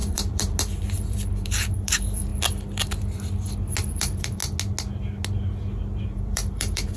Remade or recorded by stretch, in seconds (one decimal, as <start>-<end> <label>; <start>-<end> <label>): 0.0-2.3 remade; 2.3-3.9 recorded; 3.9-4.4 remade; 4.4-6.0 recorded; 6.0-7.0 remade

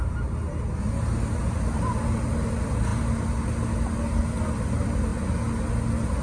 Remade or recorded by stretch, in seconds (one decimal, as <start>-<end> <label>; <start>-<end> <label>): 0.0-2.1 recorded; 2.1-2.9 remade; 2.9-4.4 recorded; 4.4-5.1 remade; 5.1-6.2 recorded